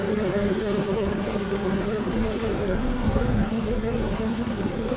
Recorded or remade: remade